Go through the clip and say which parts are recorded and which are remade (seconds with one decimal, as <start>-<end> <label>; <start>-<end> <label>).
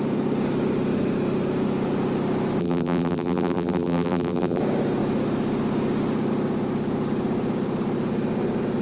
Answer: 0.0-2.6 recorded; 2.6-4.6 remade; 4.6-8.8 recorded